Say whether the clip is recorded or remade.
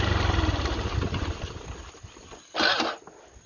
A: recorded